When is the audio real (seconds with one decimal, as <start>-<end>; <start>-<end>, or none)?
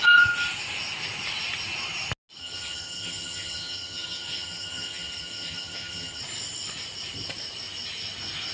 0.0-2.4; 6.2-8.5